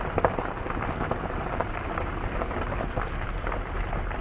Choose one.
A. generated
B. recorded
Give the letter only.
B